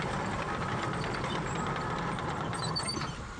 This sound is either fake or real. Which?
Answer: real